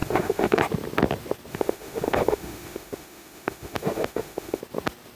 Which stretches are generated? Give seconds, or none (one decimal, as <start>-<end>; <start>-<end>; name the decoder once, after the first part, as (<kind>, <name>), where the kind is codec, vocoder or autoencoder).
0.0-0.6 (autoencoder, DAC-VAE); 1.5-4.6